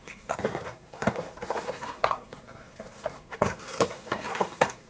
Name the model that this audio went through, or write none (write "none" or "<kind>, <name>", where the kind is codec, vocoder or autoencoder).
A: codec, SNAC